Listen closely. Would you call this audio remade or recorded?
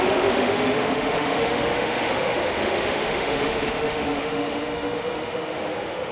remade